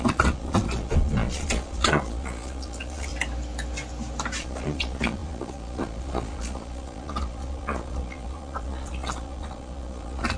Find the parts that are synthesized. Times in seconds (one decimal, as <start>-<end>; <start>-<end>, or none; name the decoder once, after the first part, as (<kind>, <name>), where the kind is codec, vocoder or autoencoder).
0.0-3.1 (vocoder, Vocos); 4.4-10.4